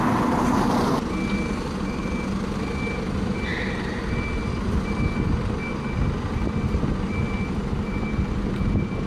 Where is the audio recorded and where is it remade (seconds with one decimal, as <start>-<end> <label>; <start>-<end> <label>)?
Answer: 0.0-9.1 recorded